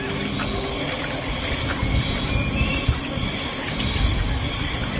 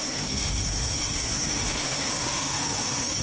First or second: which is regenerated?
second